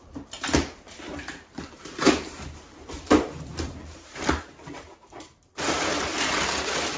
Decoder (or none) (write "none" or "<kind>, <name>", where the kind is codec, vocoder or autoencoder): vocoder, BigVGAN v2